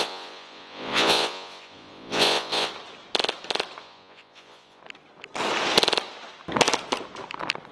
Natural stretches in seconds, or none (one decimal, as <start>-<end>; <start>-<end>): 2.7-3.8; 4.8-7.7